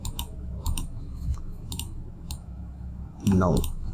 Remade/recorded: remade